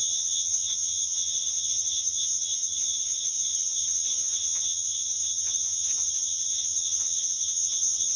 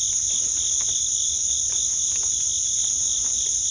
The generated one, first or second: first